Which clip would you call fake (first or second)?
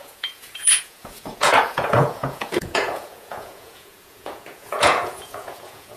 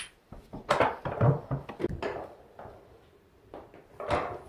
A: first